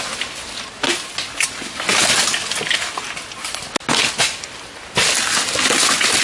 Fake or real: real